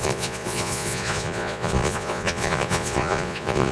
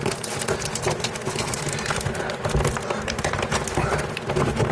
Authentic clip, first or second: second